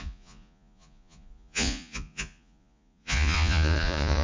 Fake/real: fake